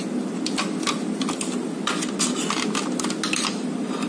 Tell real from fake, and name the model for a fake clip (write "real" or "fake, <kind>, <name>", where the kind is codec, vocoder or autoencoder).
real